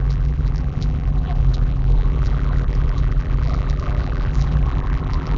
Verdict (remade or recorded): remade